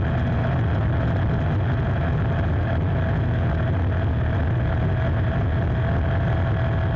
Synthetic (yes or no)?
no